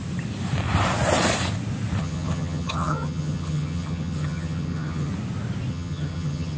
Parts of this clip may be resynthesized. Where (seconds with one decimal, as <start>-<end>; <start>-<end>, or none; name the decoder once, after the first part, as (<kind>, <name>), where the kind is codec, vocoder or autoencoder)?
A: 2.0-5.1 (vocoder, HiFi-GAN); 5.7-6.6